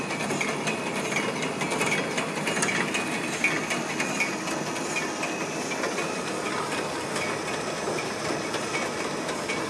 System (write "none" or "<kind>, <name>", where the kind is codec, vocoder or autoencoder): none